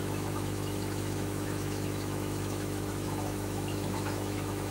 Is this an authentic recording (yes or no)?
no